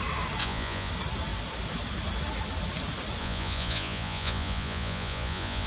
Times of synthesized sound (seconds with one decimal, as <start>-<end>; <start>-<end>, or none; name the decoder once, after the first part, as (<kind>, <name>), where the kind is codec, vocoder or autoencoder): 0.4-0.9 (vocoder, Vocos); 3.2-5.7